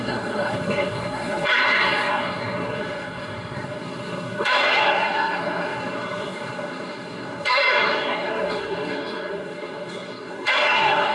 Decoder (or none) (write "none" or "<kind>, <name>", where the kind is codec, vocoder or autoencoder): codec, SNAC